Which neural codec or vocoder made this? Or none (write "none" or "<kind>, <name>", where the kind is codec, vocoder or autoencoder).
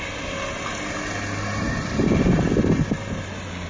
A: none